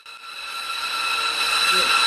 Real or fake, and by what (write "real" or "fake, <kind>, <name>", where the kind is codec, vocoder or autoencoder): real